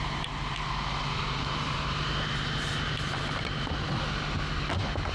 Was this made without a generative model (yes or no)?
yes